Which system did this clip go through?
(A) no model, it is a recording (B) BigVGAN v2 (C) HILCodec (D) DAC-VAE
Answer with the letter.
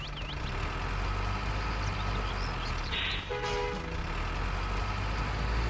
A